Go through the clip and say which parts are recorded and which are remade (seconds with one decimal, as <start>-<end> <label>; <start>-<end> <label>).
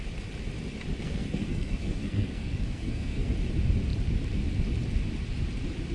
0.0-1.0 recorded; 1.0-3.3 remade; 3.3-5.9 recorded